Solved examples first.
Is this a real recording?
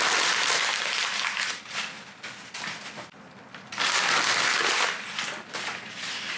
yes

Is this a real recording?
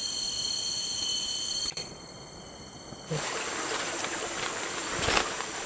yes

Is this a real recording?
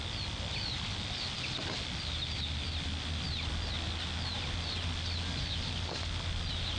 yes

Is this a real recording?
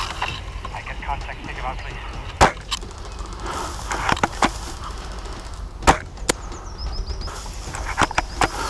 yes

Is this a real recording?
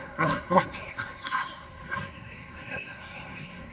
no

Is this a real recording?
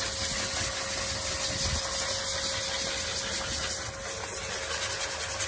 yes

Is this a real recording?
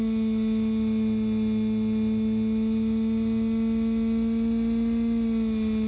yes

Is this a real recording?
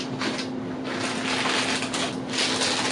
yes